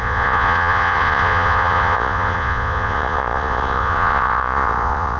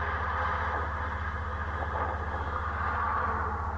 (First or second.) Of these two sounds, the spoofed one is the first